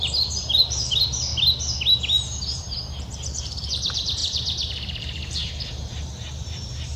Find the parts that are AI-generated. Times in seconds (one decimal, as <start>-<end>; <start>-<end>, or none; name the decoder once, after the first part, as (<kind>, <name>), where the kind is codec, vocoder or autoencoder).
0.0-1.3 (vocoder, BigVGAN v2); 2.4-7.0